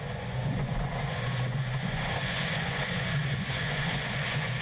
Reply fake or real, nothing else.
fake